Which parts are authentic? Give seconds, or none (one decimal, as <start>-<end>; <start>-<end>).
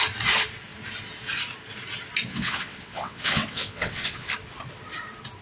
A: 0.0-2.3; 4.3-5.4